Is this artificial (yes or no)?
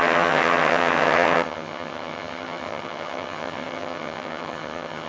yes